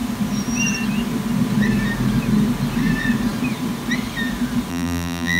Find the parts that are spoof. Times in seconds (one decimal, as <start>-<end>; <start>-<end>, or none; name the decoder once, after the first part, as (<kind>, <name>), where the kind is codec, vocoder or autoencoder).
4.7-5.4 (vocoder, BigVGAN v2)